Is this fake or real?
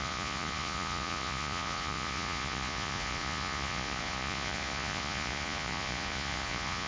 fake